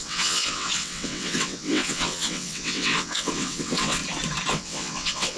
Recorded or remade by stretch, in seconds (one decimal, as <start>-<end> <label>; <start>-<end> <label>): 0.0-4.0 remade; 4.0-4.5 recorded; 4.5-5.4 remade